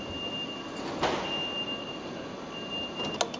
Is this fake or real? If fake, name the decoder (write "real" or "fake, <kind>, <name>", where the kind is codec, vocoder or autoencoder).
real